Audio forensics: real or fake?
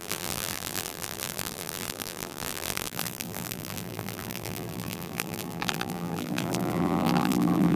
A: fake